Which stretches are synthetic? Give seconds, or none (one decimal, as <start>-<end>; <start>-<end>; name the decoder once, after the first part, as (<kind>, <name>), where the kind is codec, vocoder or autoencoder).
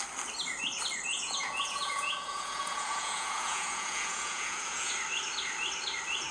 1.1-4.9 (vocoder, Vocos)